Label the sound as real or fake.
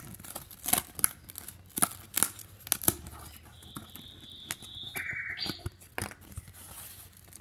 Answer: real